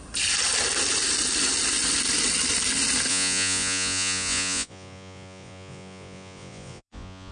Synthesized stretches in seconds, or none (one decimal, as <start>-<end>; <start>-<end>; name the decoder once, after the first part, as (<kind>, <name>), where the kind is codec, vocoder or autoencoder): 3.1-7.3 (vocoder, Vocos)